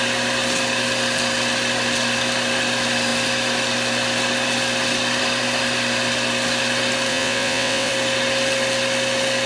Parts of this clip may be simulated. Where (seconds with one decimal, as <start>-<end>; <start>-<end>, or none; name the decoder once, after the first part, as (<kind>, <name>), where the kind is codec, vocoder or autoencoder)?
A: 7.1-7.9 (vocoder, WaveNeXt)